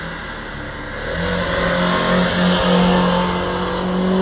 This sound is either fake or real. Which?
real